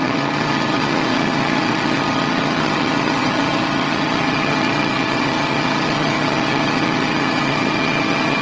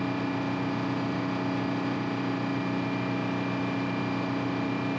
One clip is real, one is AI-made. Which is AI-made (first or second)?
first